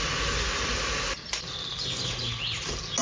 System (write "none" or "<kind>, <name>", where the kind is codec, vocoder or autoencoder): none